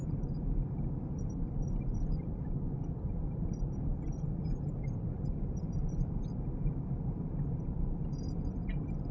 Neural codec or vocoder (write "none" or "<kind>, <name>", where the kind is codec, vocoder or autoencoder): none